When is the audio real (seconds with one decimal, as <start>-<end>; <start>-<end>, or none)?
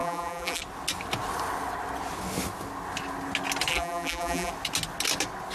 0.6-3.7; 4.5-5.5